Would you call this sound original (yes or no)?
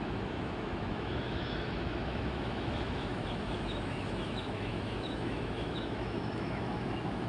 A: no